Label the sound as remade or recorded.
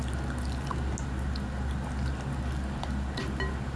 recorded